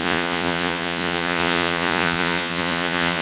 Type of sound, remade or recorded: remade